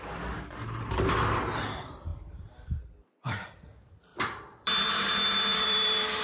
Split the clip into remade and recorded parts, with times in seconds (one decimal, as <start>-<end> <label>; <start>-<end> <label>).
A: 0.0-2.1 recorded; 2.1-2.8 remade; 2.8-4.1 recorded; 4.1-5.1 remade; 5.1-5.5 recorded; 5.5-6.2 remade